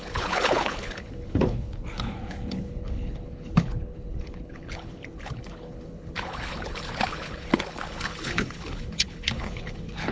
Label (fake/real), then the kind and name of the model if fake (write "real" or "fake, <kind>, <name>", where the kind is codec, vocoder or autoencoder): fake, codec, HILCodec